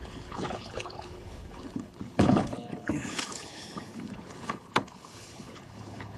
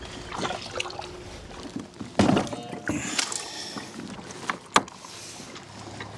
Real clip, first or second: second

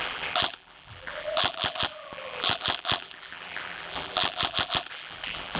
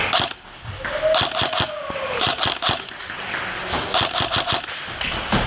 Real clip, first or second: second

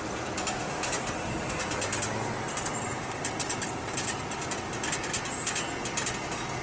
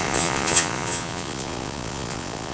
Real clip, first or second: first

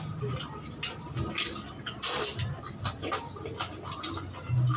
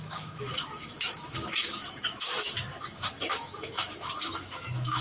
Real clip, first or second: first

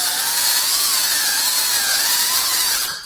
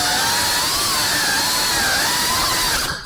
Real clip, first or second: second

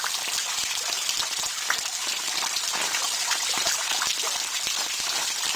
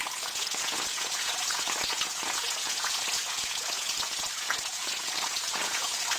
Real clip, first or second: first